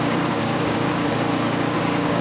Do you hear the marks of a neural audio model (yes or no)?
yes